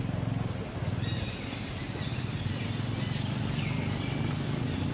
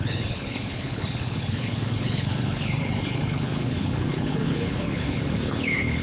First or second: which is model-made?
second